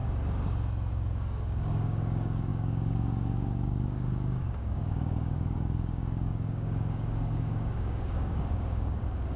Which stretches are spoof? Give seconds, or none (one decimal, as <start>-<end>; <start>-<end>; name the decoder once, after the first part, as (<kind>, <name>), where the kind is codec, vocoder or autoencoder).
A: 0.9-9.4 (codec, DAC)

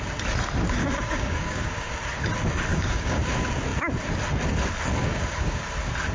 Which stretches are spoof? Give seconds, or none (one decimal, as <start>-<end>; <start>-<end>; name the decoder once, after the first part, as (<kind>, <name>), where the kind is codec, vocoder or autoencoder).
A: 0.8-1.9 (codec, DAC); 2.7-3.2; 5.0-5.6

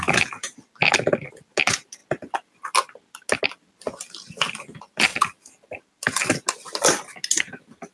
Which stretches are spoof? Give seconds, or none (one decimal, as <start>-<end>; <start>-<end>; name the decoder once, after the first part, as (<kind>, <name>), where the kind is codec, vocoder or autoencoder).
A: none

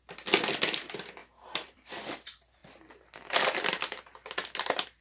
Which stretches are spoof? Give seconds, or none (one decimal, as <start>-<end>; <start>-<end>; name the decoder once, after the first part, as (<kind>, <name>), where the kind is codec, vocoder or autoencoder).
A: 1.2-1.9 (vocoder, BigVGAN v2)

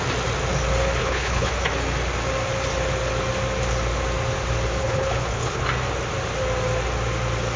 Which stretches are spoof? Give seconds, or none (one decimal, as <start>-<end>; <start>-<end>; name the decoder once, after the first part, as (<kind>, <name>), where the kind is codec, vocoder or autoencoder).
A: 1.0-1.5 (codec, HILCodec); 4.8-5.6

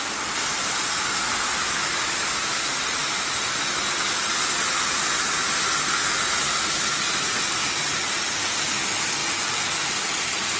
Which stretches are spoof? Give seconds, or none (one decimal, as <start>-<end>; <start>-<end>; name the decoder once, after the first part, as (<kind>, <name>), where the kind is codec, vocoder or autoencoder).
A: none

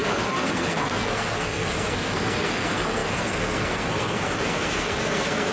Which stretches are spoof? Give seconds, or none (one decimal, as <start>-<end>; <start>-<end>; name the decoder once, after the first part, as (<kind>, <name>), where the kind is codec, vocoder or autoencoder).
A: 0.0-5.5 (codec, SNAC)

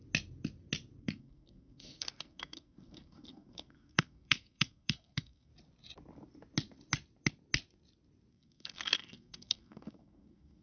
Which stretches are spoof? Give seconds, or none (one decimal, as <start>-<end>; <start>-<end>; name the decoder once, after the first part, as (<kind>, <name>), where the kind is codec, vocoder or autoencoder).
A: 1.0-5.5 (codec, SNAC); 8.3-10.6